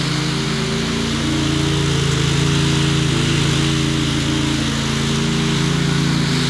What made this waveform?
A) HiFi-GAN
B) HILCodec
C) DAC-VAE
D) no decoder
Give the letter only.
D